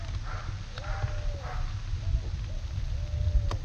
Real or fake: real